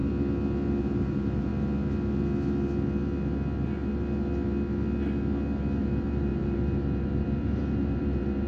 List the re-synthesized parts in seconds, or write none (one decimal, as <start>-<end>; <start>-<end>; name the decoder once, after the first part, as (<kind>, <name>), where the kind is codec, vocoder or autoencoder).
0.8-1.5 (vocoder, BigVGAN v2); 5.8-8.5